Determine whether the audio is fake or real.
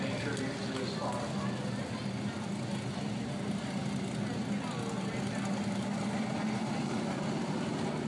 real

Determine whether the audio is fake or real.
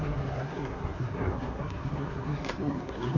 fake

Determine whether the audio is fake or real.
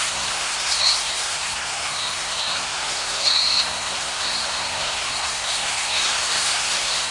fake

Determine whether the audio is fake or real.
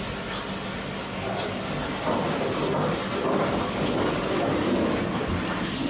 real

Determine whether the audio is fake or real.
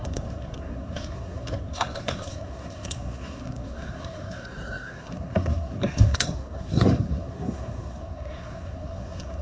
fake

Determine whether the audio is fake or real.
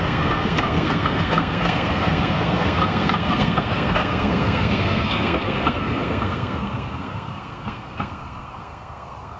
fake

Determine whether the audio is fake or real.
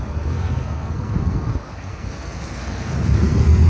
fake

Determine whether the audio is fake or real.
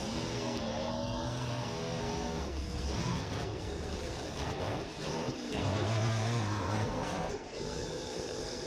fake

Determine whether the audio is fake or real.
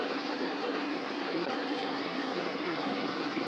fake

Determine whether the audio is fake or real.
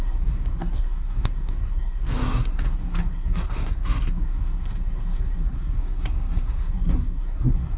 fake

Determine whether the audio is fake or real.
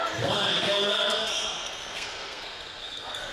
fake